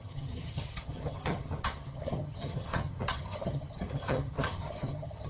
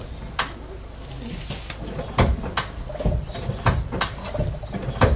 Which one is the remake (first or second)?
first